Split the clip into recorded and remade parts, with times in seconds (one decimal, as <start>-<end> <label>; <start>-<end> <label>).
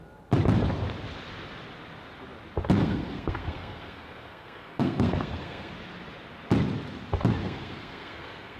0.0-2.8 recorded; 2.8-5.7 remade; 5.7-7.4 recorded; 7.4-8.6 remade